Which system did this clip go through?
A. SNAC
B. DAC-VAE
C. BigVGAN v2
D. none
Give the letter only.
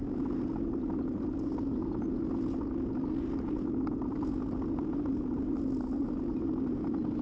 D